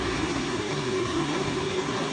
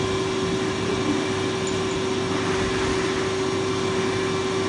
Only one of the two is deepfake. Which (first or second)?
first